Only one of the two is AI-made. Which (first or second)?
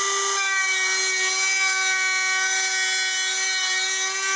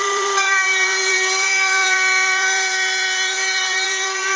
second